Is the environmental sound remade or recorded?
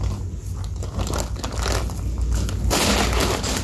recorded